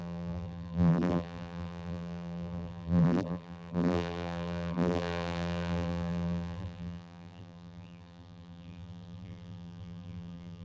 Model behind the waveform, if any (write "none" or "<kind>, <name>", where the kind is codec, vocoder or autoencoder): vocoder, BigVGAN v2